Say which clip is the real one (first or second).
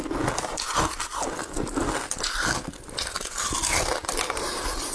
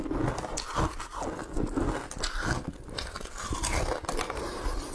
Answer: second